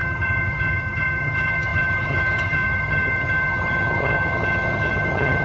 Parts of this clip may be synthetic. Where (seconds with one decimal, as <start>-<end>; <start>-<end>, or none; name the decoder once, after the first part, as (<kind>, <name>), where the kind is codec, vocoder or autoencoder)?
0.0-5.4 (vocoder, HiFi-GAN)